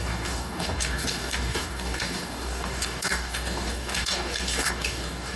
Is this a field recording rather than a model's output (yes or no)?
no